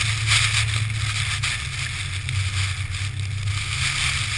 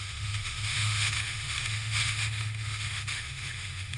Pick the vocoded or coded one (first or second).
second